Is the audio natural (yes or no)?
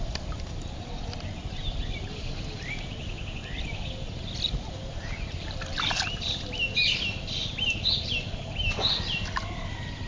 yes